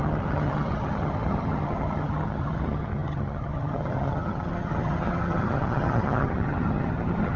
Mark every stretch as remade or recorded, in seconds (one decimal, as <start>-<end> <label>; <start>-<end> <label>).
0.0-7.4 remade